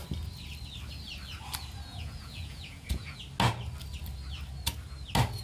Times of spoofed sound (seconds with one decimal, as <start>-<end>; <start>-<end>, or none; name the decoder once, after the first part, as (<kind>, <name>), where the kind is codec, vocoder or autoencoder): 1.9-3.2 (vocoder, Vocos)